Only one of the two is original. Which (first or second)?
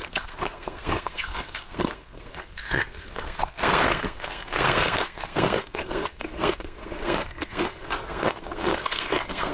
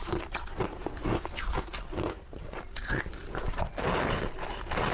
second